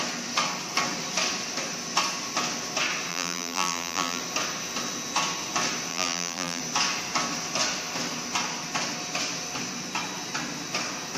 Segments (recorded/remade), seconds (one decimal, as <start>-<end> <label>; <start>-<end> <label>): 0.0-3.1 recorded; 3.1-4.2 remade; 4.2-5.9 recorded; 5.9-6.6 remade; 6.6-11.2 recorded